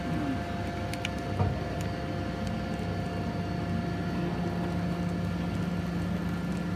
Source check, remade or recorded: recorded